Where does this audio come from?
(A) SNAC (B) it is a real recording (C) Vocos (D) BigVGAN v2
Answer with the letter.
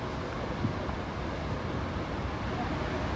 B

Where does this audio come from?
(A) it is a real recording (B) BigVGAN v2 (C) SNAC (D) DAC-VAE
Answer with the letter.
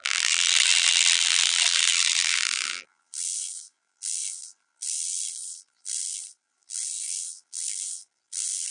B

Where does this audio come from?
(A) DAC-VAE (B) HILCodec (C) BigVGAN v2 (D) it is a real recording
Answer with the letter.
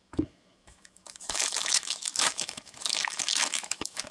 A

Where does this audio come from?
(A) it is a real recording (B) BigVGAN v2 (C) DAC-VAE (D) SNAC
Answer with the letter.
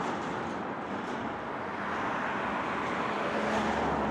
A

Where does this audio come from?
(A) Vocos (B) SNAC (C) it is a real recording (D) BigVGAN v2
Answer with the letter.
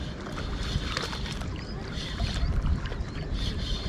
C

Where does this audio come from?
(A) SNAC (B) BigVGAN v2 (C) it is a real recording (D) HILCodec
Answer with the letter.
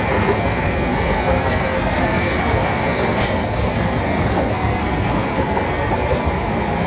A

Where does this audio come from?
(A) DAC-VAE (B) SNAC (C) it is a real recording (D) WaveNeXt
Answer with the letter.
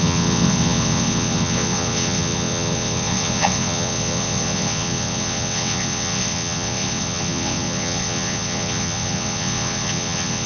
D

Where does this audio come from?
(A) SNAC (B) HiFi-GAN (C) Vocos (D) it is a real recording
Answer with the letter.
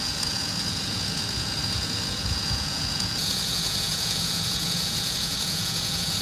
C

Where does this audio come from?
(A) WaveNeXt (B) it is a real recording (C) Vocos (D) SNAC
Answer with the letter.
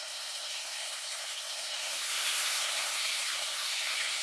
D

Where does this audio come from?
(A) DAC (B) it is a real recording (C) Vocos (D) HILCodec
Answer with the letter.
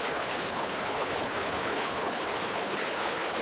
D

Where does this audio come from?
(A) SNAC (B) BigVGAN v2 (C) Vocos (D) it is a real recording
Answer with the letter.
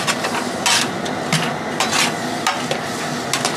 D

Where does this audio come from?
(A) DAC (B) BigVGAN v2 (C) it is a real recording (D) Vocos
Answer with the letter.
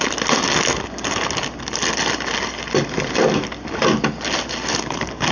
C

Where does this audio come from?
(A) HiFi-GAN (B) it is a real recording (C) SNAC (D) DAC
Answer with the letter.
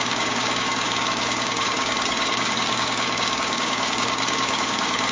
D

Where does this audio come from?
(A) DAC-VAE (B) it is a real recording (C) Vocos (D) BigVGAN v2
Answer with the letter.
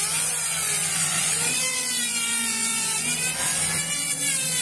C